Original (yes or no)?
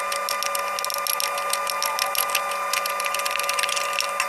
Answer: yes